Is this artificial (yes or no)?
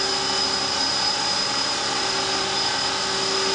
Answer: no